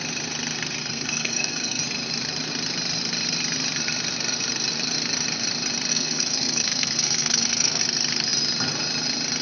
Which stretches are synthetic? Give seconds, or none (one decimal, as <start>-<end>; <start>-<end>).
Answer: 0.8-1.8; 5.9-7.8